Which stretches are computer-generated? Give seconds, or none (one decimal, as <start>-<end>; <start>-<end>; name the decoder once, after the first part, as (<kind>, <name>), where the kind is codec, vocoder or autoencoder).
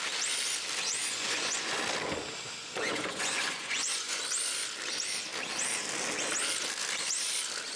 1.0-1.8 (vocoder, Vocos); 2.6-4.2